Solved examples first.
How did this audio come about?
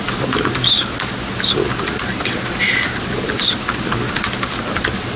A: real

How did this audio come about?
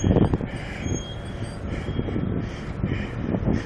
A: real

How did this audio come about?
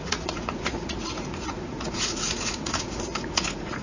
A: fake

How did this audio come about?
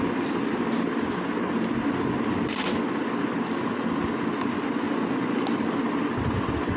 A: real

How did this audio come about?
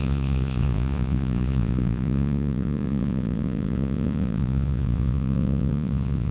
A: fake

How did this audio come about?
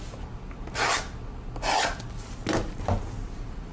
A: real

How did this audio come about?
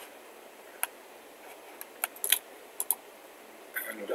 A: real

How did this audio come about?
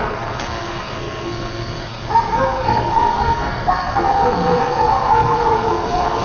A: fake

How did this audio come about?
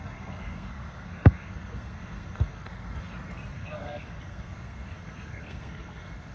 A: fake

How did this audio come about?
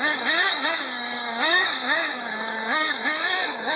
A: fake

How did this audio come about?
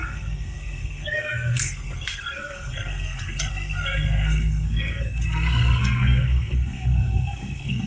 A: fake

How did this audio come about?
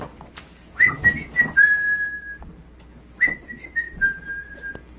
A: real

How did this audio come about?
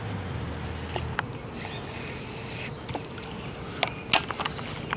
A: real